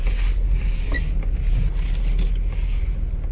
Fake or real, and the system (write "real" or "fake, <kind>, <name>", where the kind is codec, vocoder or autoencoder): real